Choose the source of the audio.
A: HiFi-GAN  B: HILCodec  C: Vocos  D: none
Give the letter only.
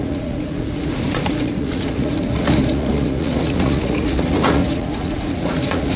C